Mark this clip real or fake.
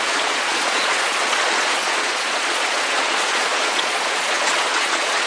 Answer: fake